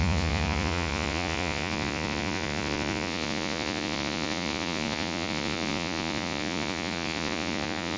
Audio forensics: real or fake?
fake